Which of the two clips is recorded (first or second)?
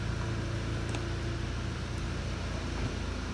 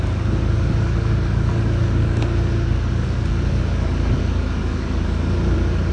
first